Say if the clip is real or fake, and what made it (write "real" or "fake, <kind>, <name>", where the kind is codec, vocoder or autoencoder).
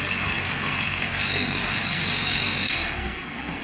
fake, codec, SNAC